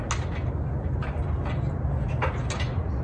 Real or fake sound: real